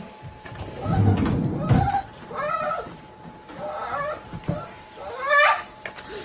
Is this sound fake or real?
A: real